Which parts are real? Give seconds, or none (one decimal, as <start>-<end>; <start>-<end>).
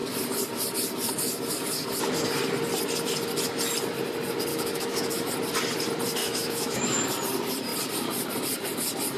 0.0-4.5; 5.3-6.2; 7.1-9.2